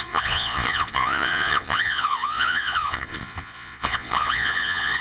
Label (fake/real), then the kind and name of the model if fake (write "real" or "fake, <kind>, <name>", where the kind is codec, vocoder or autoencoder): fake, vocoder, Vocos